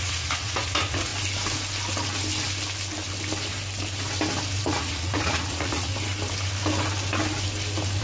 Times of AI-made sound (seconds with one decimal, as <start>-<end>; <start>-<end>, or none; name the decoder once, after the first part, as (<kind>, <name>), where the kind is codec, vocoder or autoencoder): 0.0-1.1 (vocoder, Vocos); 4.6-5.9